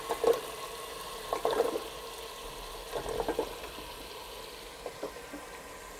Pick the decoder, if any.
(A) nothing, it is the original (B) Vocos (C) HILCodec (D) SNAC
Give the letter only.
A